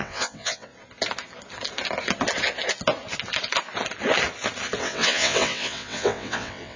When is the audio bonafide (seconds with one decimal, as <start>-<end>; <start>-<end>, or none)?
0.7-4.8